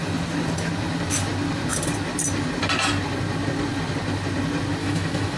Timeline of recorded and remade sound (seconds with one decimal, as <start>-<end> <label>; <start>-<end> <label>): 0.0-4.8 recorded; 4.8-5.4 remade